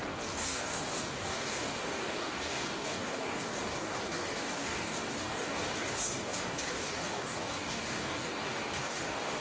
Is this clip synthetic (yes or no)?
yes